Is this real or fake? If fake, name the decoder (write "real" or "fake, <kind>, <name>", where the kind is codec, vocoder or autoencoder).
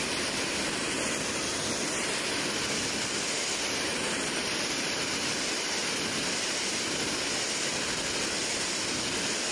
fake, vocoder, BigVGAN v2